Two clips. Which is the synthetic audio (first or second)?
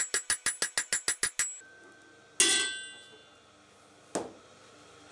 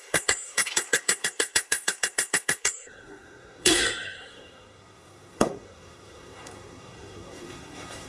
second